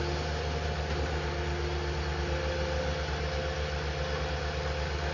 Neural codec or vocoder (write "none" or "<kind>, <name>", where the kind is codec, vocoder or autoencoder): none